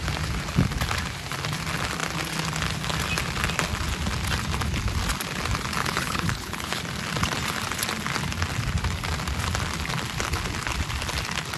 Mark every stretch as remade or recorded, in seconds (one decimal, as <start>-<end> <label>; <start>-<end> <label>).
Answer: 0.0-5.8 recorded; 5.8-6.8 remade; 6.8-11.6 recorded